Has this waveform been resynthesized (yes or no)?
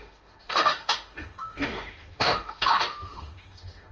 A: yes